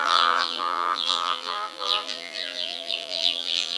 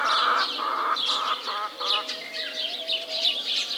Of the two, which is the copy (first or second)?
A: first